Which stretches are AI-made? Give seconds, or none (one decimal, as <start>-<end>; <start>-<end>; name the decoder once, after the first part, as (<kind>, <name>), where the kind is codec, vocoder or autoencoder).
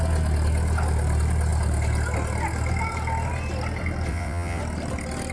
4.1-4.6 (vocoder, WaveNeXt)